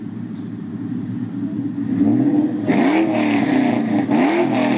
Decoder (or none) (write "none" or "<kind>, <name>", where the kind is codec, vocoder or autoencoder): none